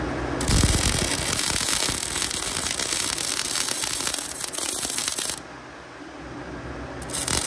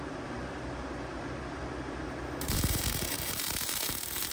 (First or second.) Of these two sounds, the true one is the first